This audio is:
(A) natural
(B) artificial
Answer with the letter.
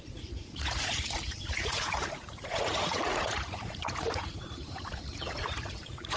B